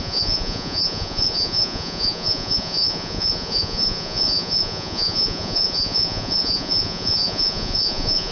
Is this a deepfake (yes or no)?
yes